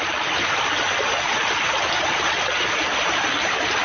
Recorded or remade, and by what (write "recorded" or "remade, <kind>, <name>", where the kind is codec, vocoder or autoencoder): recorded